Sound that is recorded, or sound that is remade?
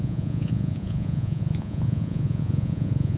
remade